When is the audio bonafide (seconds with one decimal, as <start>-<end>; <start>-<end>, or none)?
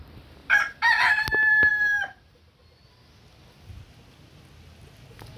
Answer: 0.0-5.4